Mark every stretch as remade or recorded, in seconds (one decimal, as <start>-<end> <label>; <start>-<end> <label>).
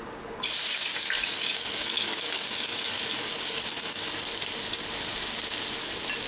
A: 0.0-0.6 recorded; 0.6-4.1 remade; 4.1-6.3 recorded